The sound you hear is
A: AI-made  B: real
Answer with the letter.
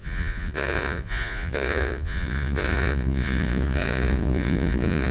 A